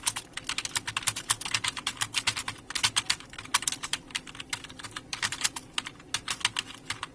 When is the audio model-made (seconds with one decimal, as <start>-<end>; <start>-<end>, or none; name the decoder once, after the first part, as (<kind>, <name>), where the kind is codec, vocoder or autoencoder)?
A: 3.5-5.9 (vocoder, BigVGAN v2)